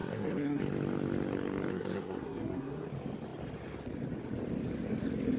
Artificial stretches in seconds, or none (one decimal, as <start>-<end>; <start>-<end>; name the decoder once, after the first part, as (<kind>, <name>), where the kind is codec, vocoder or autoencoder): 0.0-0.6 (codec, SNAC); 1.7-2.9